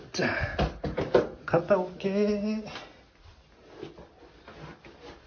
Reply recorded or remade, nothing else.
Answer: recorded